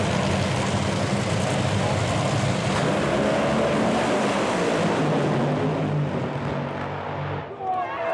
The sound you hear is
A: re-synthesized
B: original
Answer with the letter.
B